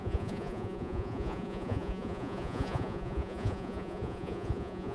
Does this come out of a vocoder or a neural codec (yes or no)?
yes